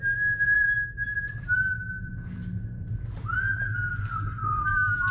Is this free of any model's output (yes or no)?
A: yes